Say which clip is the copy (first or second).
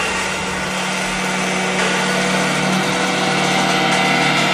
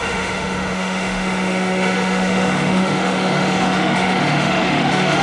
second